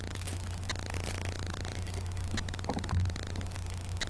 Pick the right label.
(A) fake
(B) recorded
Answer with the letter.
B